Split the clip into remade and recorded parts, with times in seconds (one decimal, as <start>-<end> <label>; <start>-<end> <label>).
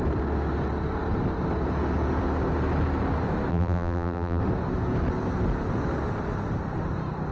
0.0-3.5 recorded; 3.5-4.4 remade; 4.4-7.3 recorded